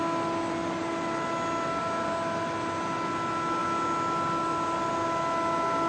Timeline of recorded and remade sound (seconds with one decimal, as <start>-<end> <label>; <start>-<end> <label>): 0.0-5.9 recorded